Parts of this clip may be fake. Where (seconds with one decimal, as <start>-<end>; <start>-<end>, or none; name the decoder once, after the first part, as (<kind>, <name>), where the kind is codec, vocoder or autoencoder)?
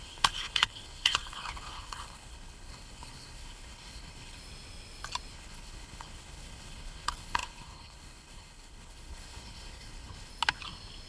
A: 0.0-4.4 (codec, HILCodec); 5.3-10.3